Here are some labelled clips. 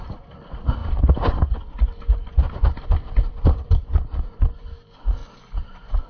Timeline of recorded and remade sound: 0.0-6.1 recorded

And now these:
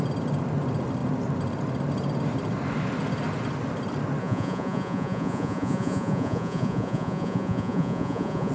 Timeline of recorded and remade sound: 0.0-4.2 recorded; 4.2-8.5 remade